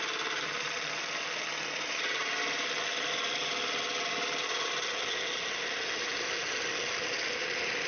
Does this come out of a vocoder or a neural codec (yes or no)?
no